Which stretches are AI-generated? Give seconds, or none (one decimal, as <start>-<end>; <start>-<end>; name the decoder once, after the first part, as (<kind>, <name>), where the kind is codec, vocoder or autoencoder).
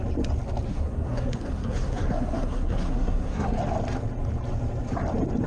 0.7-3.6 (codec, SNAC)